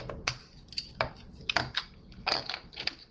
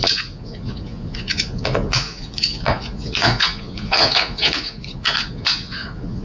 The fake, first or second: second